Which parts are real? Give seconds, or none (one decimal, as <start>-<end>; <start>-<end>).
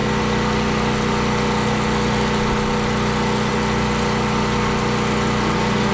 0.0-5.9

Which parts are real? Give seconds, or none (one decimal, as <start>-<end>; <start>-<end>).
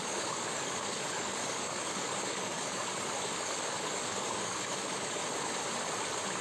5.2-6.4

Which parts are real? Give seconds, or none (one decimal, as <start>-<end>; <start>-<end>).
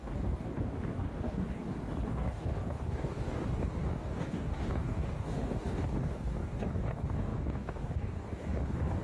1.6-2.1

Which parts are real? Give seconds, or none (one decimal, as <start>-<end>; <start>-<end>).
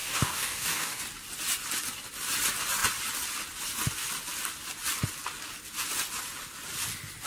1.0-7.3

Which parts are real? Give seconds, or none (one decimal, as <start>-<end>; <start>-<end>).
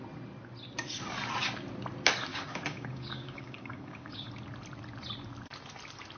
0.0-2.3; 4.3-6.2